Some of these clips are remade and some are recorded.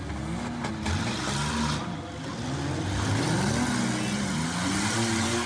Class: recorded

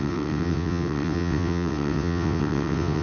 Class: remade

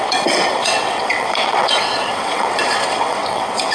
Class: remade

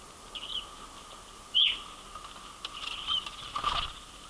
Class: recorded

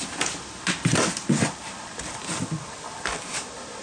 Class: recorded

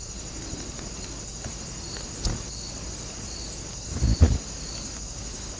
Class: recorded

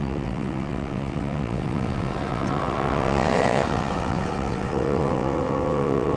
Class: remade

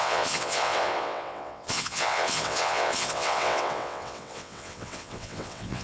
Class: remade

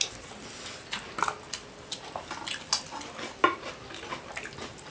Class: recorded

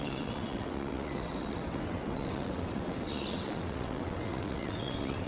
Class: remade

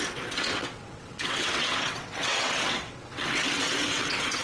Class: remade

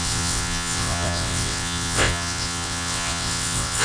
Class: remade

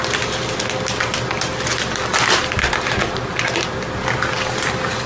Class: recorded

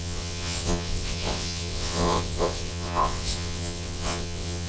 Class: remade